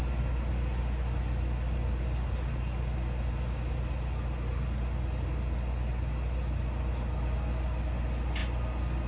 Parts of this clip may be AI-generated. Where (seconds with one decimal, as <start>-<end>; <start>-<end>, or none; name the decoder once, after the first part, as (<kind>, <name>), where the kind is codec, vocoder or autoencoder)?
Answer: none

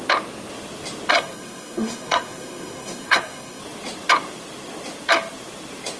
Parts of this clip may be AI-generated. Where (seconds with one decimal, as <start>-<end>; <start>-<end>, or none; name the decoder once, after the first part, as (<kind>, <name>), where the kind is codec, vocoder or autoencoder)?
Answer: 1.1-3.6 (codec, SNAC)

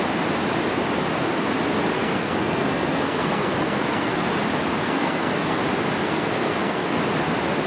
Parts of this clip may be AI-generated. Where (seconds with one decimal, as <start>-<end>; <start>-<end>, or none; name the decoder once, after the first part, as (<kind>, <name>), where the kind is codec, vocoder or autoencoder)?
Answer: 1.9-4.3 (codec, SNAC); 4.8-5.6; 6.0-7.0

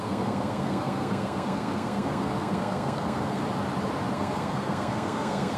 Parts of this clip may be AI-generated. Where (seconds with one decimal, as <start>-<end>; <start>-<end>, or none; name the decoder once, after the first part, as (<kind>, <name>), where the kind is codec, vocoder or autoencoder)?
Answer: 0.0-3.4 (codec, SNAC); 4.1-5.6